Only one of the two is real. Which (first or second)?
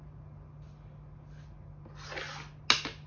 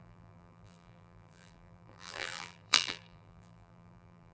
first